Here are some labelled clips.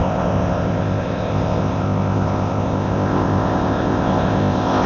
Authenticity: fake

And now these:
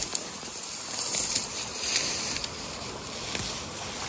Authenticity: real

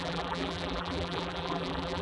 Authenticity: fake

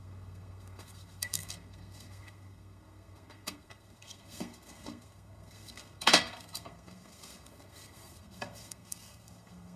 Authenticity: fake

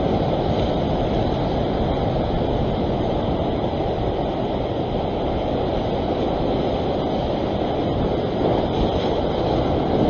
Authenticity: real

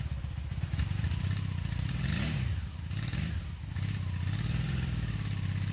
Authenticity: fake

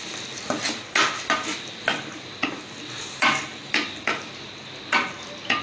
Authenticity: real